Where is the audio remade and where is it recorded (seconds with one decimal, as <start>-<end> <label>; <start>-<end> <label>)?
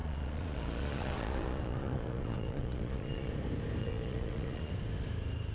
0.0-3.3 remade; 3.3-3.8 recorded; 3.8-4.7 remade; 4.7-5.5 recorded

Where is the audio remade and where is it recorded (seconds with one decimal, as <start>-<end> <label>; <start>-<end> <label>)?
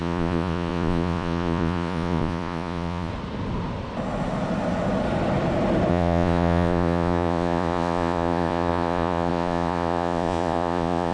0.0-3.1 remade; 3.1-5.9 recorded; 5.9-11.1 remade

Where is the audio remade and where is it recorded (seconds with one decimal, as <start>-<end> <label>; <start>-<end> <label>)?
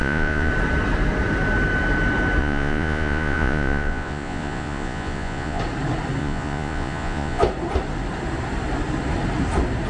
0.0-0.5 remade; 0.5-2.4 recorded; 2.4-5.6 remade; 5.6-6.2 recorded; 6.2-7.4 remade; 7.4-9.9 recorded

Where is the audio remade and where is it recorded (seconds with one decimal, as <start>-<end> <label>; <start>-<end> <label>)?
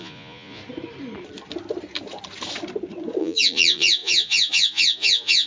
0.0-0.6 remade; 0.6-3.2 recorded; 3.2-5.5 remade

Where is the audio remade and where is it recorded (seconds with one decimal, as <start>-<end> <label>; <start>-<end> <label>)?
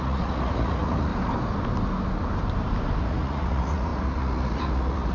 0.0-1.1 remade; 1.1-3.0 recorded; 3.0-5.1 remade